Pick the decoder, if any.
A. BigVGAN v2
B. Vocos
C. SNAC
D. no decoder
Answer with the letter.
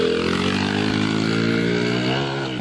D